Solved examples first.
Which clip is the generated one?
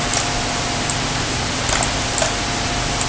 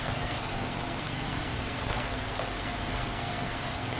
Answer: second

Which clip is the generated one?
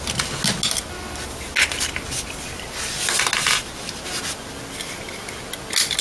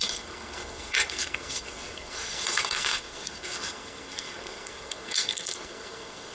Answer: second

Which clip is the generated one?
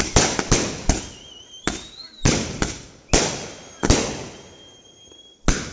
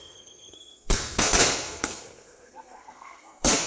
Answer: second